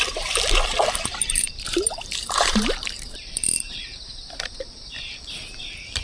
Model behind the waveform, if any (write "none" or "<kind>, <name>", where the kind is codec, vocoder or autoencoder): vocoder, BigVGAN v2